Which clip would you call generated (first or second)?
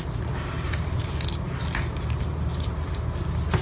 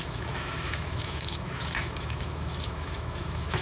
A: second